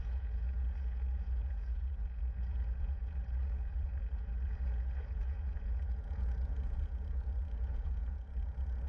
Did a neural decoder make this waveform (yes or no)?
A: yes